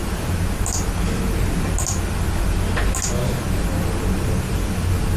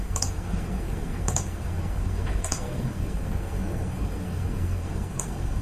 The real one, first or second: first